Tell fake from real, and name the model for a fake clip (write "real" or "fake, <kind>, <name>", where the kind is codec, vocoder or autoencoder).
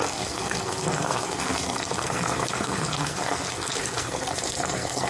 fake, codec, SNAC